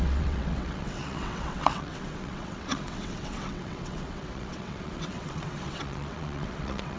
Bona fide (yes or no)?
no